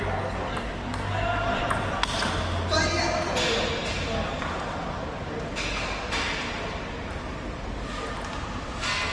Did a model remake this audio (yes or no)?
no